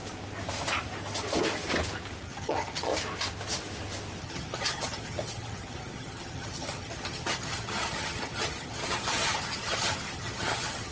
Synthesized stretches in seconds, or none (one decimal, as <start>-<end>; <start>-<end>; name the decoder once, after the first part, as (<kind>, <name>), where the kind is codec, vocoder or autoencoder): 2.2-2.9 (vocoder, HiFi-GAN); 4.2-10.9